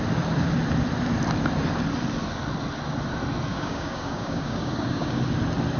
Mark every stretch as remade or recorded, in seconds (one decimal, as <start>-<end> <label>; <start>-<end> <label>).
0.0-3.5 recorded; 3.5-5.2 remade; 5.2-5.8 recorded